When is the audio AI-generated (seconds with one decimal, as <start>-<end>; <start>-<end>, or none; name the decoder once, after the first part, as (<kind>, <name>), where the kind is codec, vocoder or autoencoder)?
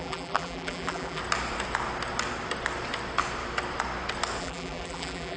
0.0-1.2 (vocoder, BigVGAN v2); 4.4-5.4